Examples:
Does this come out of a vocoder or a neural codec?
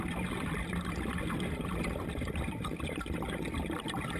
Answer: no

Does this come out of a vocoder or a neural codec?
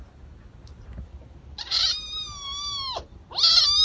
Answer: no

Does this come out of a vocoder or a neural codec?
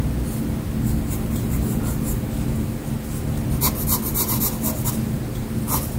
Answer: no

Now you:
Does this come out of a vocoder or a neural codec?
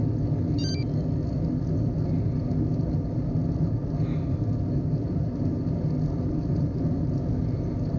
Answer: no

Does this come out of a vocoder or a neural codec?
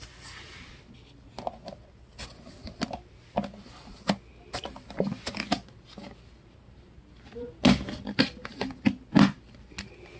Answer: no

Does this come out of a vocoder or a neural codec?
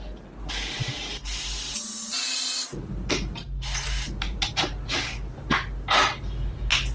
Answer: no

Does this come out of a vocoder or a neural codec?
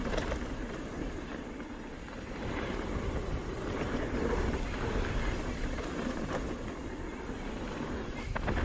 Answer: no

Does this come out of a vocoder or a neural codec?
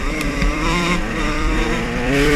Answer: yes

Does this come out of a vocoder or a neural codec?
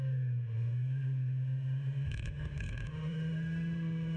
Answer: yes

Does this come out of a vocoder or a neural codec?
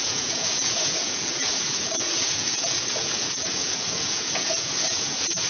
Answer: yes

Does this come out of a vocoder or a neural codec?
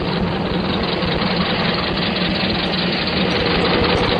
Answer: no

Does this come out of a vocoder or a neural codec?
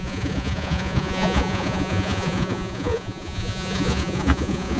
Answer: yes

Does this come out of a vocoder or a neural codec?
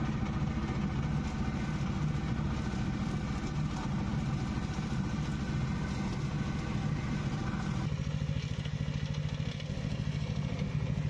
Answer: no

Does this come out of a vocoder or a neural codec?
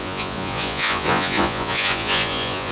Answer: yes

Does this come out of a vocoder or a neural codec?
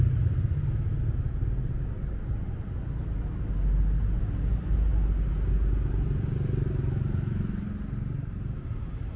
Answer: no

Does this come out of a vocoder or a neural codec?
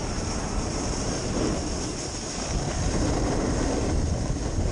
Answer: no